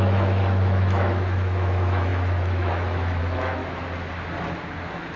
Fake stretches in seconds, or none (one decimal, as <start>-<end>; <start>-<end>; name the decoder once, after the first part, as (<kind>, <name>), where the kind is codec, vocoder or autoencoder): 0.0-3.6 (autoencoder, DAC-VAE)